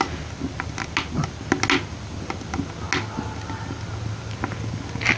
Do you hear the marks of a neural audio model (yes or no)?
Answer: no